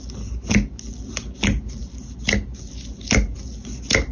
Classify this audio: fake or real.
real